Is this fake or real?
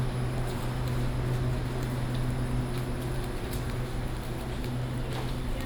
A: real